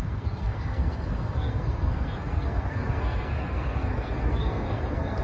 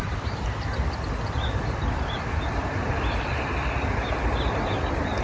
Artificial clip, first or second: first